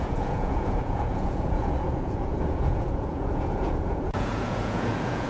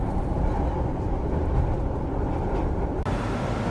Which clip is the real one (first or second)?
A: second